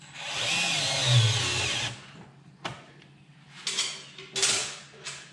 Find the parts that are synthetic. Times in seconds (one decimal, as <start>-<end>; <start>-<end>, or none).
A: none